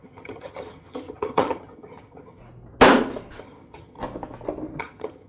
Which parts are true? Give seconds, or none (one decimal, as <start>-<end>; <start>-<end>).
2.4-3.4; 4.0-4.8